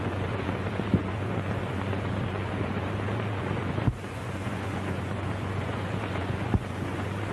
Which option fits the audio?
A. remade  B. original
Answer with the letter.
A